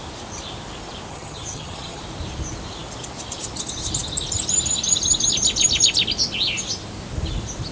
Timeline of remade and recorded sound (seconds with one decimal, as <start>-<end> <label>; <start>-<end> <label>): 0.0-1.1 recorded; 1.1-2.0 remade; 2.0-7.7 recorded

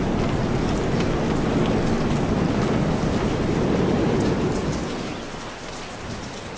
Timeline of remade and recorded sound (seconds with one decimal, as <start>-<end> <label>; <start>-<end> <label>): 0.0-6.6 recorded

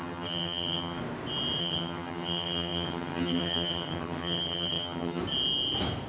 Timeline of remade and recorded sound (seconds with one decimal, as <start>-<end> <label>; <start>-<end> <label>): 0.0-1.0 remade; 1.0-1.6 recorded; 1.6-5.2 remade; 5.2-6.1 recorded

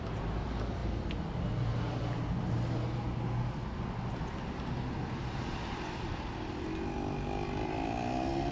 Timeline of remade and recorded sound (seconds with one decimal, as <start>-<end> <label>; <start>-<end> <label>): 0.0-8.5 recorded

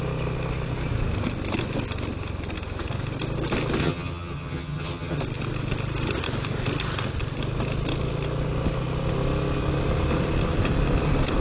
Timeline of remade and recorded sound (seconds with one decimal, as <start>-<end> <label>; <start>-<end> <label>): 0.0-3.8 recorded; 3.8-5.2 remade; 5.2-11.4 recorded

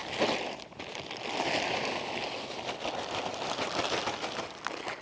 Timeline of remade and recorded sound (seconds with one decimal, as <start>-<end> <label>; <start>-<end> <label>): 0.0-5.0 recorded